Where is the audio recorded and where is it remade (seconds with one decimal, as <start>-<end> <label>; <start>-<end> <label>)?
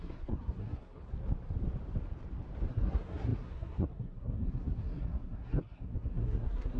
0.0-1.0 remade; 1.0-2.7 recorded; 2.7-6.8 remade